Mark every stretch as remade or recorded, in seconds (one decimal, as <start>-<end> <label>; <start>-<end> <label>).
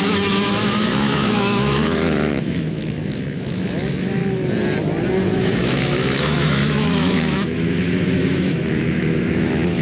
0.0-4.2 remade; 4.2-5.4 recorded; 5.4-9.8 remade